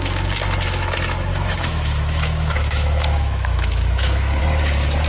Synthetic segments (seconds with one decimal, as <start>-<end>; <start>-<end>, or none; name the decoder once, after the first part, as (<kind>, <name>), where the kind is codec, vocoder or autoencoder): 1.3-4.4 (autoencoder, DAC-VAE)